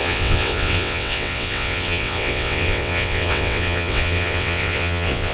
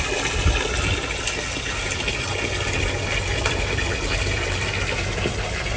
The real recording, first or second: second